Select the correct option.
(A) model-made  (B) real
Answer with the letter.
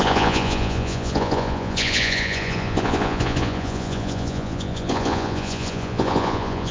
A